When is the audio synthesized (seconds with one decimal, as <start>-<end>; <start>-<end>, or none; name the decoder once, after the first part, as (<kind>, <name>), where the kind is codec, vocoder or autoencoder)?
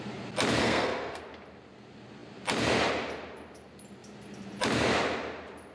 0.6-1.2 (codec, SNAC)